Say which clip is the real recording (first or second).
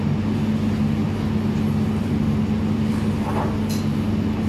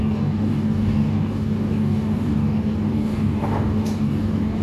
first